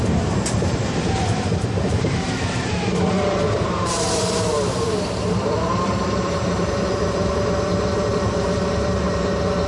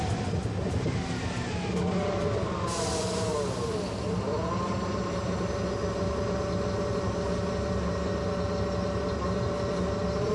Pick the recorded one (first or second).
second